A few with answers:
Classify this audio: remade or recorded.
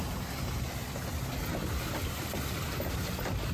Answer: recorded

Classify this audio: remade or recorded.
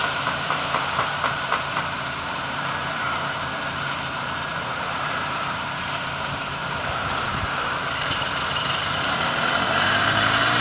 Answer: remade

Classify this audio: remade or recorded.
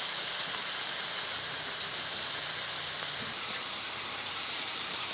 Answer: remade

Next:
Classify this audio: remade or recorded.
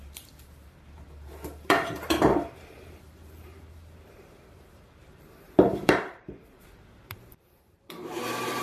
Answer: remade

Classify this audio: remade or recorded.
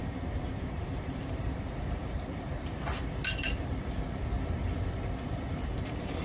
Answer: remade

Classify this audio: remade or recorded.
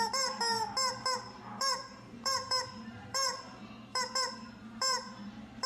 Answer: remade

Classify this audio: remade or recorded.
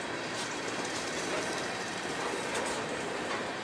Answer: remade